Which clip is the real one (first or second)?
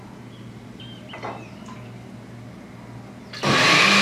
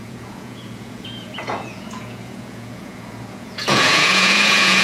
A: first